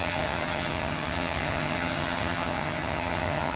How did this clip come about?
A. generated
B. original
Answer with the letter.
A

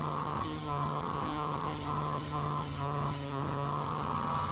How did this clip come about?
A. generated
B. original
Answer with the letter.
A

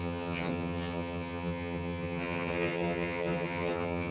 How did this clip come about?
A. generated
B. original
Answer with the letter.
A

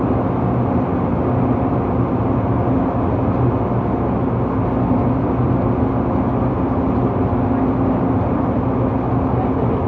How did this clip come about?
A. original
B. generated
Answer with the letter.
A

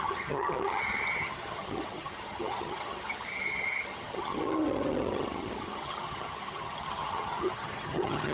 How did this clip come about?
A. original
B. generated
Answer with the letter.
B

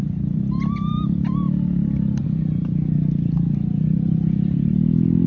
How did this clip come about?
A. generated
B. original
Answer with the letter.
B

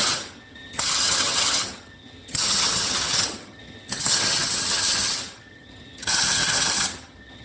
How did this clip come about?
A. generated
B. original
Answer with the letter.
A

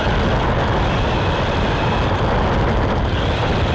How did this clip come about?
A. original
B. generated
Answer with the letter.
A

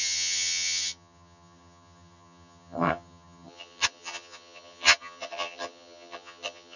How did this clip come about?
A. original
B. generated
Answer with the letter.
B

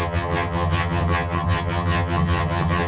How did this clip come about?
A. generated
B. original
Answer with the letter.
A